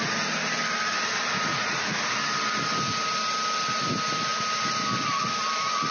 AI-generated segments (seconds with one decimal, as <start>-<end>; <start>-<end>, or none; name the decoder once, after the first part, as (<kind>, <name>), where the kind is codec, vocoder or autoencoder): 1.5-2.2 (vocoder, Vocos)